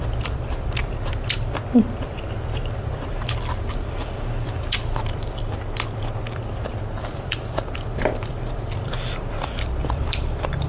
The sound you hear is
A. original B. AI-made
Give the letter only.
B